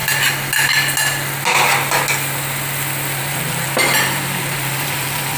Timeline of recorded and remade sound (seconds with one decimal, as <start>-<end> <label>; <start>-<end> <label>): 0.0-3.2 recorded; 3.2-5.4 remade